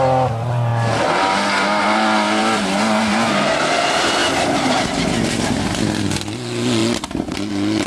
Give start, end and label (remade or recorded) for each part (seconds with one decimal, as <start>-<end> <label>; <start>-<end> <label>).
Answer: 0.0-2.4 recorded; 2.4-3.0 remade; 3.0-7.9 recorded